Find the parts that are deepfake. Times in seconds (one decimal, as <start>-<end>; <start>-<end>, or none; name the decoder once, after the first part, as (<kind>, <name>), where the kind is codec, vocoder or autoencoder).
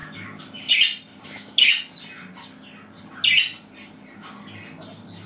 0.0-0.7 (autoencoder, DAC-VAE); 1.1-1.7